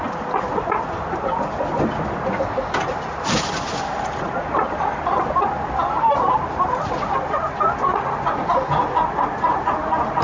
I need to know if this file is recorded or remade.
recorded